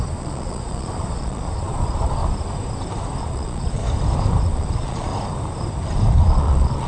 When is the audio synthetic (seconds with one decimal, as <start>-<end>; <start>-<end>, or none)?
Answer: 0.0-2.2; 3.2-3.8; 4.4-5.1; 6.2-6.9